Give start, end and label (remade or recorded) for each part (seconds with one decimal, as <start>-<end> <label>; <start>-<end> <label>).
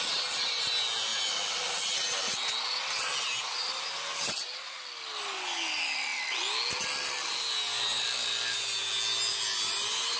0.0-10.2 recorded